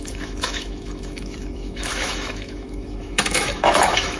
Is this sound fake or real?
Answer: fake